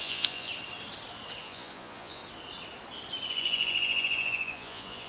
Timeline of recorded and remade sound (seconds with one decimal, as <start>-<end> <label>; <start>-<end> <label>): 0.0-0.5 remade; 0.5-1.4 recorded; 1.4-2.2 remade; 2.2-3.3 recorded; 3.3-5.1 remade